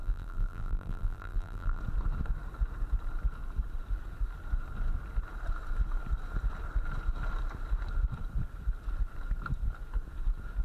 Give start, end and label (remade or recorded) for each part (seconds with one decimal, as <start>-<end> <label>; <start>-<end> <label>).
0.0-1.8 remade; 1.8-10.6 recorded